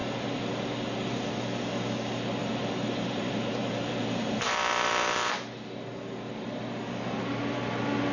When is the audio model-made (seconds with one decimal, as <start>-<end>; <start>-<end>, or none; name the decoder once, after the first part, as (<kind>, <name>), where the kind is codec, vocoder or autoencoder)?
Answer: 0.0-1.3 (vocoder, BigVGAN v2); 2.4-5.3